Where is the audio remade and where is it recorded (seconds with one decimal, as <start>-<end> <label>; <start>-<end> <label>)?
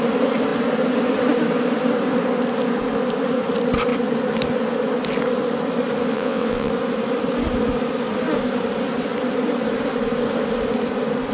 0.0-6.1 recorded; 6.1-6.7 remade; 6.7-11.3 recorded